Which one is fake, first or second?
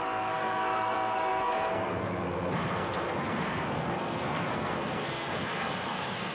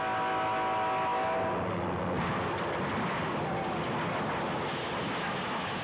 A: first